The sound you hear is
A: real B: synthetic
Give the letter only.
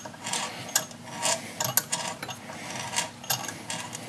A